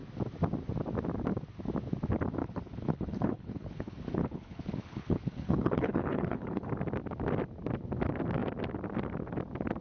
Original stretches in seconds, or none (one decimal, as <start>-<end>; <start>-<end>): 0.0-2.4; 6.7-9.8